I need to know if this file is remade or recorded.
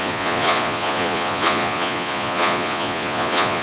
remade